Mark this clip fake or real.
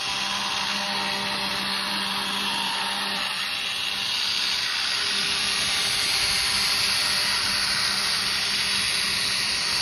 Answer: real